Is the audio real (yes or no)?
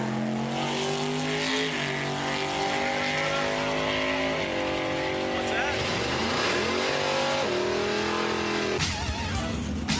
yes